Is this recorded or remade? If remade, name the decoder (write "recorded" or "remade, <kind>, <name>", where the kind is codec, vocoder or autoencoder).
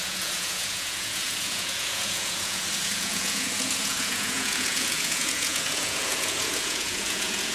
remade, vocoder, Vocos